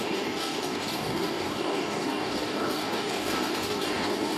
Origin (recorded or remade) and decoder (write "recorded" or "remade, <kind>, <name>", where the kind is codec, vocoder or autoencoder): remade, codec, DAC